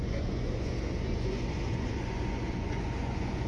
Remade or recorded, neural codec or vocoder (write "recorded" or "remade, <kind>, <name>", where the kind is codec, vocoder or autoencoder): remade, vocoder, Vocos